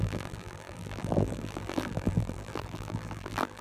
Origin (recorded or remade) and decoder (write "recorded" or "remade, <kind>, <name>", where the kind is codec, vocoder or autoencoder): remade, vocoder, BigVGAN v2